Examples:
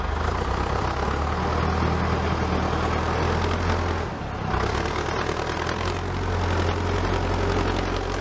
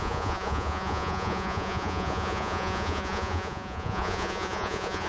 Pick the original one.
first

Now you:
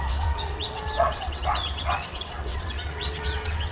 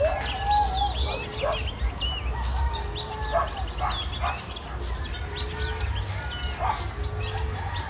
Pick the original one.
second